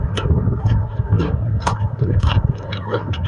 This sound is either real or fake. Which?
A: fake